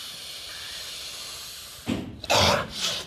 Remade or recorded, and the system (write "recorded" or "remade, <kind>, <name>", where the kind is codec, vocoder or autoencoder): recorded